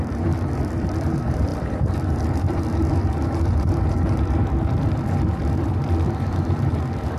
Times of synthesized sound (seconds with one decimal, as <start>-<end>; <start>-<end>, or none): 0.0-7.2